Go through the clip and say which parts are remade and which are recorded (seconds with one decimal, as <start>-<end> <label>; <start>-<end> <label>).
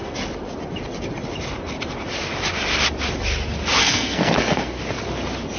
0.0-3.8 recorded; 3.8-4.8 remade; 4.8-5.6 recorded